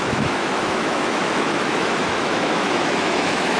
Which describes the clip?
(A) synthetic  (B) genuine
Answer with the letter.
A